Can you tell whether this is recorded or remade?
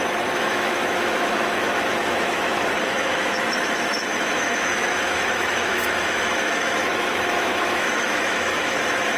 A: remade